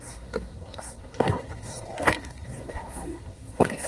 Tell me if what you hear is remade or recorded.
remade